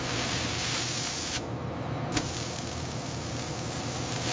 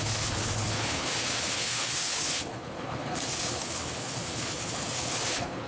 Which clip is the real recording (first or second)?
first